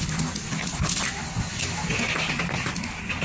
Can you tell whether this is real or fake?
real